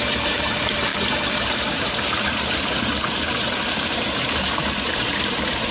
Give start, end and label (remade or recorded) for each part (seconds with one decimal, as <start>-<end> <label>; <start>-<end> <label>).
0.0-5.7 remade

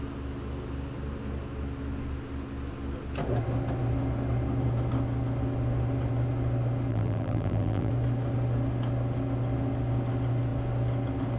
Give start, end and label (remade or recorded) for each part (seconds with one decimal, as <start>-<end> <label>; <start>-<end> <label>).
0.0-6.9 recorded; 6.9-7.9 remade; 7.9-11.4 recorded

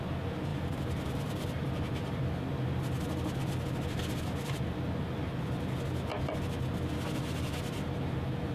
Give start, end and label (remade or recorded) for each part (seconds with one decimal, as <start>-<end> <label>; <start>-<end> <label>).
0.0-0.5 recorded; 0.5-2.2 remade; 2.2-8.5 recorded

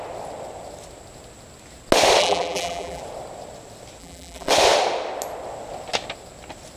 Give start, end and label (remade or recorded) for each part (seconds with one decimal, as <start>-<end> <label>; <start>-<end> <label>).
0.0-2.2 recorded; 2.2-3.0 remade; 3.0-4.0 recorded; 4.0-4.5 remade; 4.5-6.8 recorded

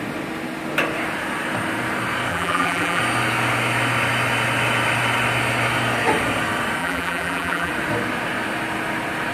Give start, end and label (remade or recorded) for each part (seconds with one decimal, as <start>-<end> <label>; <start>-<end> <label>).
0.0-2.3 recorded; 2.3-3.0 remade; 3.0-6.8 recorded; 6.8-7.7 remade; 7.7-9.3 recorded

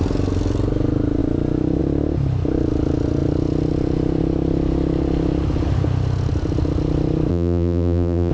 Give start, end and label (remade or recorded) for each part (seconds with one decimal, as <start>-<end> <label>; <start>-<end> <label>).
0.0-7.3 recorded; 7.3-8.3 remade